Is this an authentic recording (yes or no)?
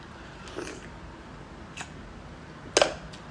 yes